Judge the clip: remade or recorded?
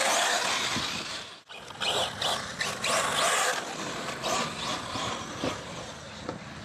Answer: recorded